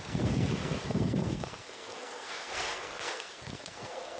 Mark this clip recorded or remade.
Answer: remade